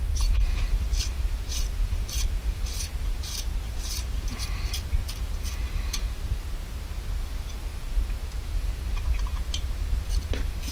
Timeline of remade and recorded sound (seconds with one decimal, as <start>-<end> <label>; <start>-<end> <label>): 0.0-10.7 remade